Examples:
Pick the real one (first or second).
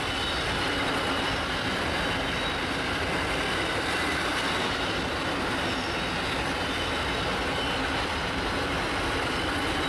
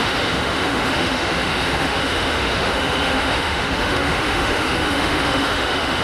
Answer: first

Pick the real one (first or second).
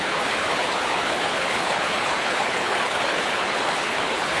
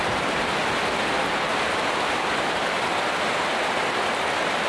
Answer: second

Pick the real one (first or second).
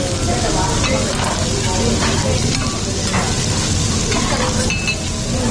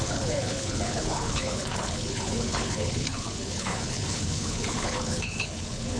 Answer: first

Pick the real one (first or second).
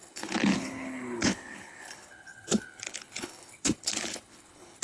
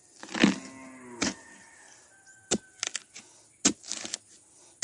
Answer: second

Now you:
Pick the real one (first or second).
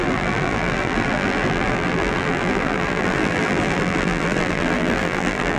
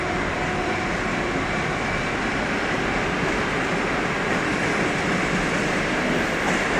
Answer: second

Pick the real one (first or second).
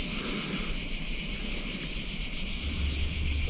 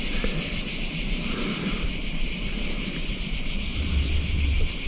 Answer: first